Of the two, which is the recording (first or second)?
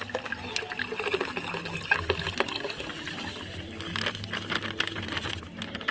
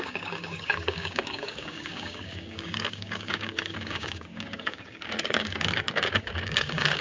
first